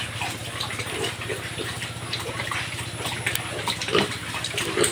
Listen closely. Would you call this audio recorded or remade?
recorded